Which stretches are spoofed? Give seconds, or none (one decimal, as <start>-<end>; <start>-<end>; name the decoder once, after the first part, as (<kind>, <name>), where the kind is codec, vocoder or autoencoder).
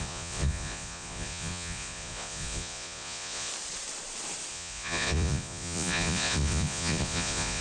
0.0-3.5 (vocoder, Vocos); 4.5-7.6